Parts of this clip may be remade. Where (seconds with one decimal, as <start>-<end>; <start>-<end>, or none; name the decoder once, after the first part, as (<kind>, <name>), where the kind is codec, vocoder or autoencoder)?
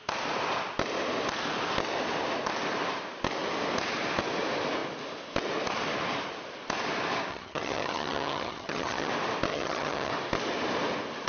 7.3-9.1 (vocoder, HiFi-GAN); 9.5-10.1